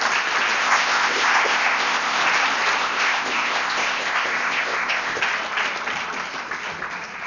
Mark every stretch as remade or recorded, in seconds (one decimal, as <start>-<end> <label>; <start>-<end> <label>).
0.0-0.6 recorded; 0.6-2.2 remade; 2.2-2.8 recorded; 2.8-5.2 remade; 5.2-7.3 recorded